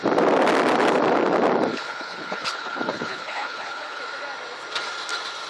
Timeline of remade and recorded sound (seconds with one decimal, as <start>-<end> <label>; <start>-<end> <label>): 0.0-1.7 recorded; 1.7-4.0 remade; 4.0-5.5 recorded